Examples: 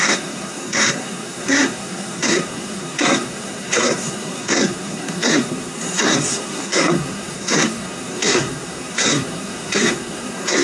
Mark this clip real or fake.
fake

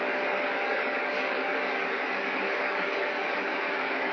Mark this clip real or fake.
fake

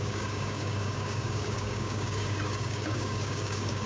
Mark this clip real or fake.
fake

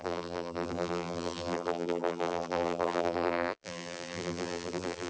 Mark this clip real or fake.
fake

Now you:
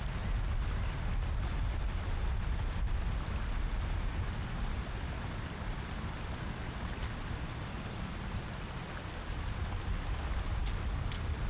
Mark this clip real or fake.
real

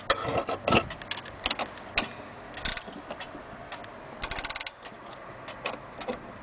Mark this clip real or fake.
real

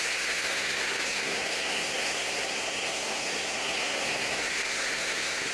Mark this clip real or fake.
fake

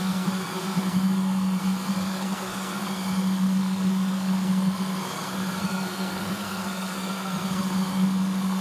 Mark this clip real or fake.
fake